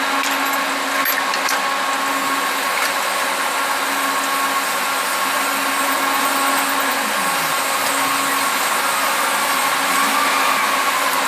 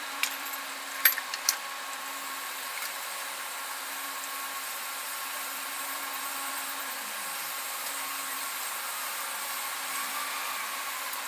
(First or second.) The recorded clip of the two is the first